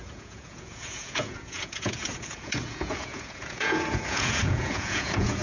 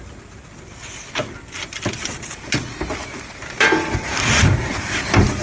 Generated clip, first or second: first